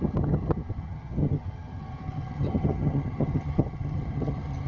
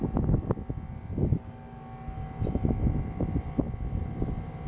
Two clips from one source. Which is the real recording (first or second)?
second